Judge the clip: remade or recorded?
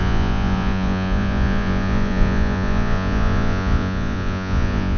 remade